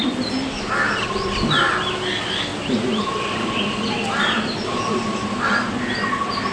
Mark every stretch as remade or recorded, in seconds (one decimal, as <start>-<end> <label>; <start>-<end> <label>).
0.0-6.5 recorded